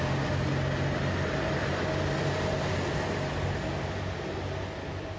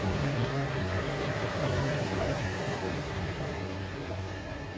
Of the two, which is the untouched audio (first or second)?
first